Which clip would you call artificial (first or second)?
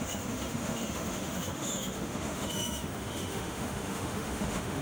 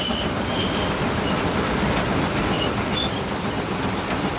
first